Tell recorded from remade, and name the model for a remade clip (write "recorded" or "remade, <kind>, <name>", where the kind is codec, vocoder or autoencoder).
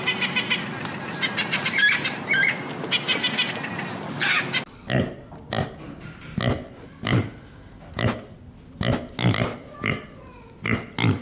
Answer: recorded